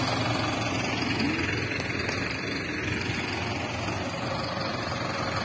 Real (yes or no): yes